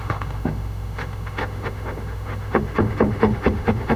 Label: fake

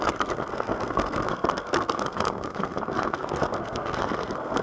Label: fake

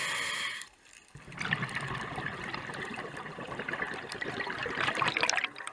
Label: real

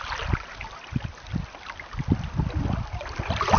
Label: real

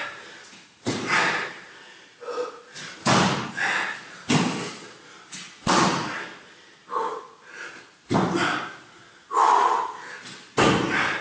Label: real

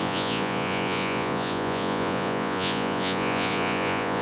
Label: fake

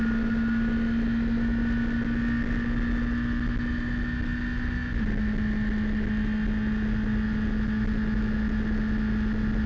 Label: real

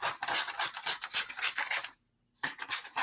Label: real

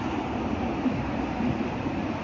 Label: real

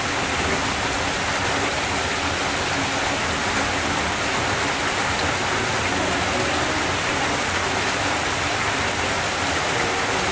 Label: real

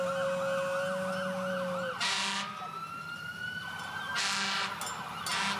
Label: real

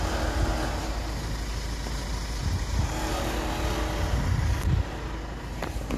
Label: real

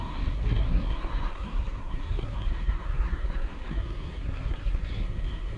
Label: fake